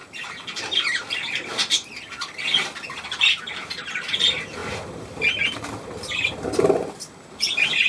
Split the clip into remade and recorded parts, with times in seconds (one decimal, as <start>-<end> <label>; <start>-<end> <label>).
0.0-7.9 recorded